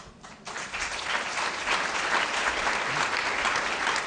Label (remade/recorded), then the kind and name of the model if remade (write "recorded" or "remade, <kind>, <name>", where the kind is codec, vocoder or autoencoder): recorded